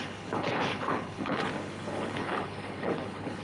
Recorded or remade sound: remade